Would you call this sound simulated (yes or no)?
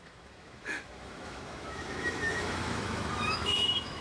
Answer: yes